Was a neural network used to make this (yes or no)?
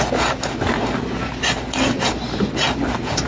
no